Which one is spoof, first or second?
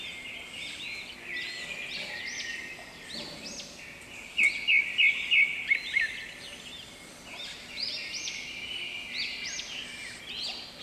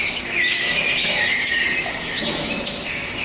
second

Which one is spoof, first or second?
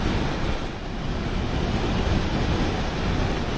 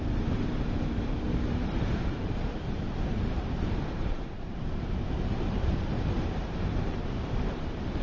second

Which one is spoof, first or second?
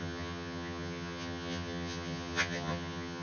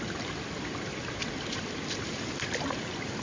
first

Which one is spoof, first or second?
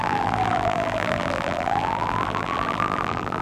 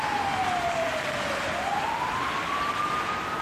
first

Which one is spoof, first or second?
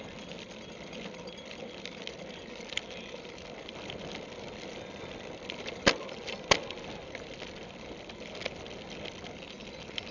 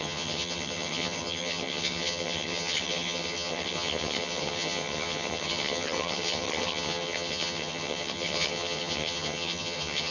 second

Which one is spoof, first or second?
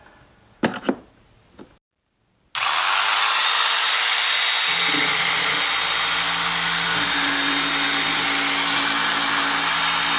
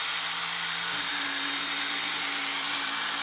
second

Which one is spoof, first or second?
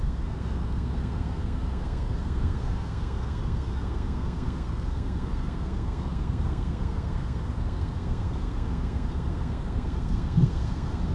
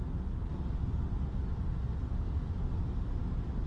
first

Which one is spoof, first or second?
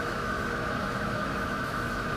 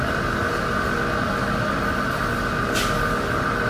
first